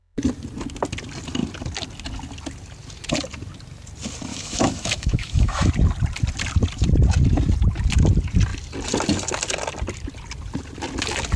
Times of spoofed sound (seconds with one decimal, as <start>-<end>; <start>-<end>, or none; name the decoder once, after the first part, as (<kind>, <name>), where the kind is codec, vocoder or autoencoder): 4.3-5.7 (autoencoder, DAC-VAE)